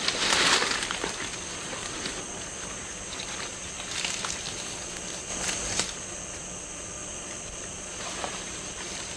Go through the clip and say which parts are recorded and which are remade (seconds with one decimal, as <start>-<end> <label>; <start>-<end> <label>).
0.0-2.9 remade; 2.9-3.5 recorded; 3.5-9.2 remade